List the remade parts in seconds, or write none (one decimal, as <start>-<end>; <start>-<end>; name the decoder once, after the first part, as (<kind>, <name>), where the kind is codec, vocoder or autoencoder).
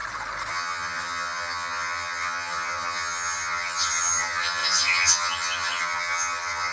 0.5-6.7 (vocoder, HiFi-GAN)